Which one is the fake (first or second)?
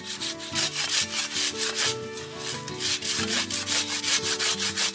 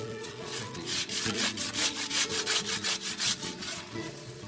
second